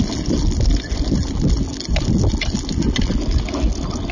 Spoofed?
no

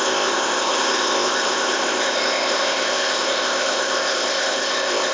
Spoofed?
yes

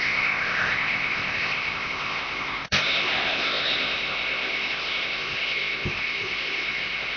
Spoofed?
yes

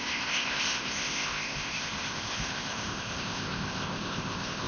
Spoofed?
yes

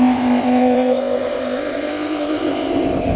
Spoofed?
yes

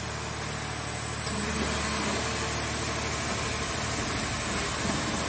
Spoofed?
no